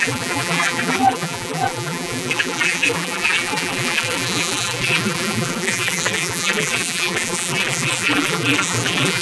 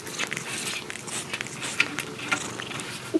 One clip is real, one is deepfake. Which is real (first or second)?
second